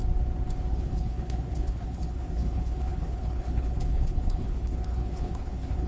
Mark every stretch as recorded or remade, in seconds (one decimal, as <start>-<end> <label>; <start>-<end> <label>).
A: 0.0-0.7 recorded; 0.7-5.9 remade